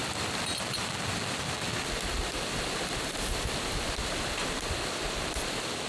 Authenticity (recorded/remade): recorded